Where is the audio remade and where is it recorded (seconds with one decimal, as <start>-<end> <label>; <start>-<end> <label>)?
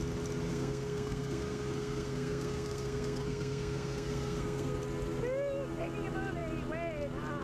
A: 0.0-0.5 recorded; 0.5-4.8 remade; 4.8-7.4 recorded